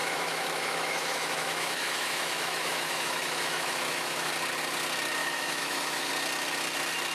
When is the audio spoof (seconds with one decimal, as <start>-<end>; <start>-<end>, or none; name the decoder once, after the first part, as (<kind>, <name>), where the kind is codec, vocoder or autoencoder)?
0.0-4.3 (autoencoder, DAC-VAE); 5.2-6.1